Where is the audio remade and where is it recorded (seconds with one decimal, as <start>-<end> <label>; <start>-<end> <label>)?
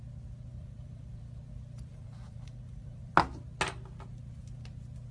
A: 0.0-0.5 recorded; 0.5-1.2 remade; 1.2-1.9 recorded; 1.9-3.0 remade; 3.0-5.1 recorded